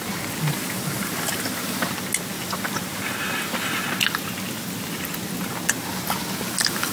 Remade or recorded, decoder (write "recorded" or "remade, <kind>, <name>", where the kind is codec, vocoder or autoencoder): recorded